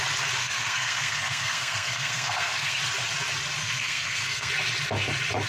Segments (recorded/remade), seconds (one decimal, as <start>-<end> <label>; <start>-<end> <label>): 0.0-0.4 recorded; 0.4-2.8 remade; 2.8-3.6 recorded; 3.6-4.5 remade; 4.5-5.5 recorded